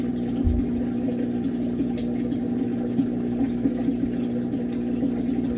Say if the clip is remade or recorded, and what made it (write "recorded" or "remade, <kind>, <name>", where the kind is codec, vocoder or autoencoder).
recorded